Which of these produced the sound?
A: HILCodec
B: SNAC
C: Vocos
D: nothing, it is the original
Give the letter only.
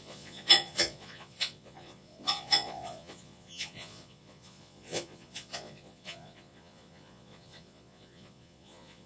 C